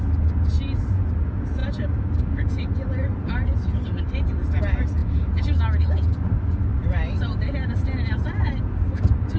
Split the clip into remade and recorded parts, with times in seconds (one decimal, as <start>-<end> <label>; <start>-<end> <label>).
0.0-9.4 recorded